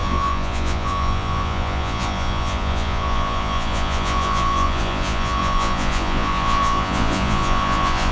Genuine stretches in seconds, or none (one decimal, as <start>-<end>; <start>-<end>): none